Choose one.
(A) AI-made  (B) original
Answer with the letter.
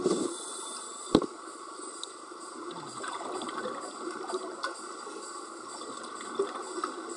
B